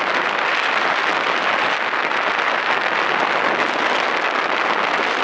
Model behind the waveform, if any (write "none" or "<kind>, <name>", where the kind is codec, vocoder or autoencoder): none